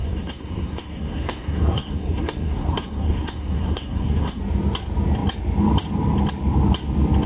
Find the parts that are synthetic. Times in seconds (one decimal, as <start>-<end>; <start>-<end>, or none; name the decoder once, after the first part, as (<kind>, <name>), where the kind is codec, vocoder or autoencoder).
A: 0.0-4.4 (codec, SNAC)